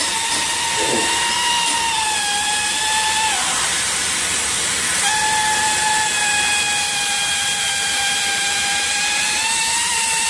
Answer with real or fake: real